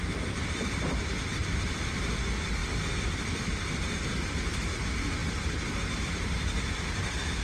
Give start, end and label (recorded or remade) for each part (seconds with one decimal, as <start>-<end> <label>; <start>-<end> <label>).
0.0-1.4 recorded; 1.4-2.1 remade; 2.1-7.4 recorded